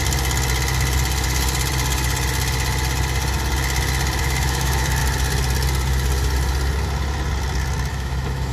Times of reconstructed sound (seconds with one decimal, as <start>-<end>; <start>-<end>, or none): 4.2-5.0; 7.9-8.5